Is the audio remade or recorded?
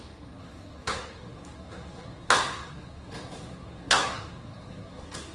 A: remade